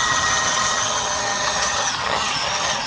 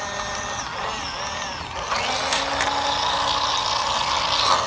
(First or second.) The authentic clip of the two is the second